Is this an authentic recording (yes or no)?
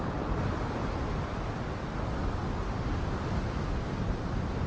yes